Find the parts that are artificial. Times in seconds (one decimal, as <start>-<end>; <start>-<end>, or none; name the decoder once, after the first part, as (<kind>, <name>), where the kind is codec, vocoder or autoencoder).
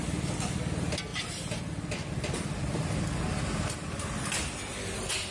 none